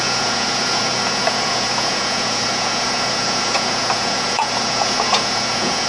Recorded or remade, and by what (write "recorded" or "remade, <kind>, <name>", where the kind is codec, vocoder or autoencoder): remade, vocoder, Vocos